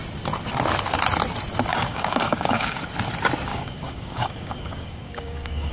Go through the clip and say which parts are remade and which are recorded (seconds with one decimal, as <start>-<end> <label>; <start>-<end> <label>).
0.0-1.7 recorded; 1.7-2.8 remade; 2.8-3.5 recorded; 3.5-5.7 remade